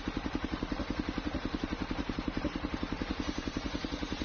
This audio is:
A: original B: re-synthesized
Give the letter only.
B